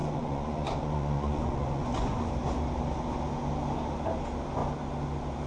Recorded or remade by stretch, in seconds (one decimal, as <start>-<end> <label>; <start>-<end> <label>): 0.0-2.3 remade; 2.3-5.5 recorded